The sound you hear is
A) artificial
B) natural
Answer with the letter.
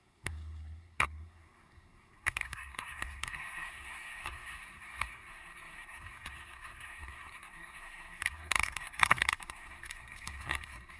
A